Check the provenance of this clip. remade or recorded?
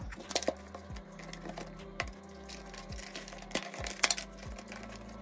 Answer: recorded